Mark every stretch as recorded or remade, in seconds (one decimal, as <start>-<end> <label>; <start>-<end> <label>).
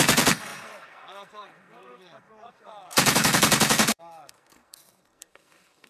0.0-5.9 remade